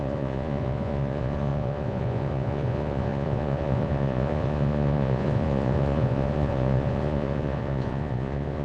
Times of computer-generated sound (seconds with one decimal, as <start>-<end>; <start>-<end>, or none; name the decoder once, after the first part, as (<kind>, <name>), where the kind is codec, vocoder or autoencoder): 0.0-8.6 (vocoder, Vocos)